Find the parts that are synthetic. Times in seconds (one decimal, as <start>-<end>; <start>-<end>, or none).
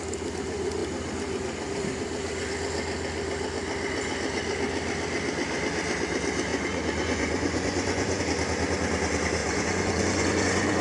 6.5-8.2; 9.4-10.8